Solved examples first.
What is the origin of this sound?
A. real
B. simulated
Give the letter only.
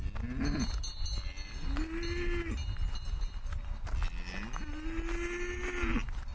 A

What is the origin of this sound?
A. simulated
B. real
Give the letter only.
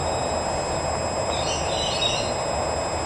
B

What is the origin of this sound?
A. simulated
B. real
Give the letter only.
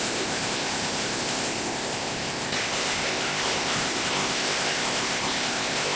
A